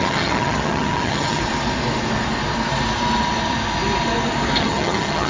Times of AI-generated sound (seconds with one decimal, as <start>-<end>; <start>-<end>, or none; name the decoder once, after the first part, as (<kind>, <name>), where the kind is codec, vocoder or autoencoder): 0.0-1.4 (vocoder, HiFi-GAN); 4.6-5.3